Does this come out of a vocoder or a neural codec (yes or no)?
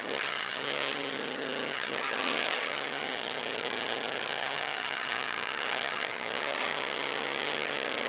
yes